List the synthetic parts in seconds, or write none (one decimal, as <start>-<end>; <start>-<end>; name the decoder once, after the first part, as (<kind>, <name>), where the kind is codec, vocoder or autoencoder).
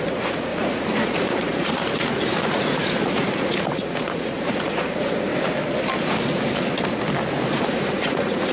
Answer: 0.0-5.3 (vocoder, Vocos); 7.5-8.5